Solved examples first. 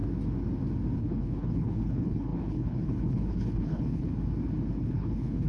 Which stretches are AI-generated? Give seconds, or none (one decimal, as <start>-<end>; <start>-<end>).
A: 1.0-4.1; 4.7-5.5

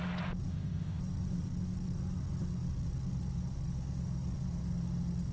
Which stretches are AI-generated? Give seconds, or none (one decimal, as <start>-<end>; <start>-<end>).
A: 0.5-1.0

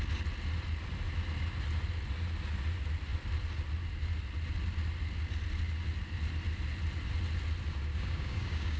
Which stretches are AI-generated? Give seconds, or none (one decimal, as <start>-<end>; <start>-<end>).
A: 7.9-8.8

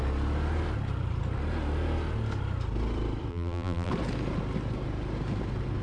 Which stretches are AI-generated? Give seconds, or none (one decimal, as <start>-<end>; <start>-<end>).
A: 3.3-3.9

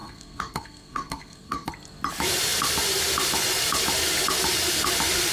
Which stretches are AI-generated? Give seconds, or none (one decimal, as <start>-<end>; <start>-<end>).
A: 0.0-1.7

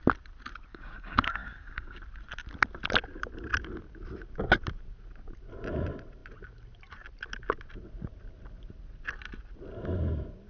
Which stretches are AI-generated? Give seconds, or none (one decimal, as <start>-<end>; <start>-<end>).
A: 0.7-2.0

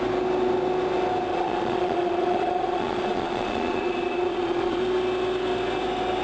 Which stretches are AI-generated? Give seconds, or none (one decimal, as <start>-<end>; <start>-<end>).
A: 1.3-4.8